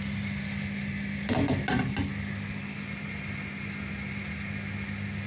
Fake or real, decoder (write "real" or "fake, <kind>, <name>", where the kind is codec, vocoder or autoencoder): real